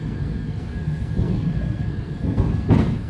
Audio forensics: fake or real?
fake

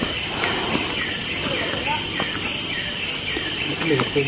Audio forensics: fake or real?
real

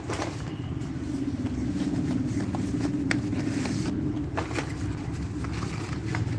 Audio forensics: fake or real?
real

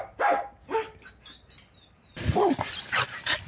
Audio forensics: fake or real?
real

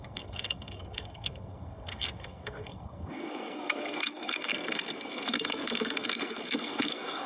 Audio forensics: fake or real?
fake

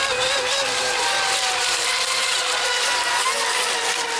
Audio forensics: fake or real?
real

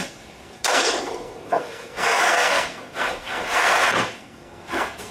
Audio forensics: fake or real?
fake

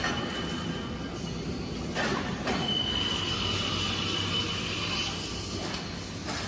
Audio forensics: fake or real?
real